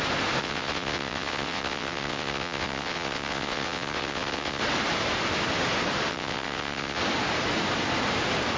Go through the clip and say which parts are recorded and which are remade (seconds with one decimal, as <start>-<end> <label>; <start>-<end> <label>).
0.0-0.4 recorded; 0.4-4.6 remade; 4.6-6.1 recorded; 6.1-7.0 remade; 7.0-8.6 recorded